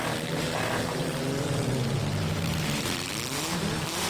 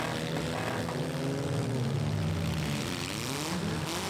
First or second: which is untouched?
second